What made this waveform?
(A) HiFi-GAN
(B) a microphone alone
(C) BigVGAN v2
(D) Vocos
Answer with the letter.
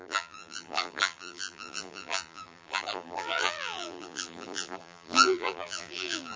C